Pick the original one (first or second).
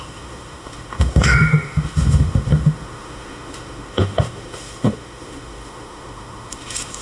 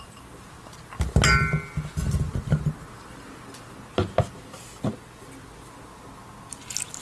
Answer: second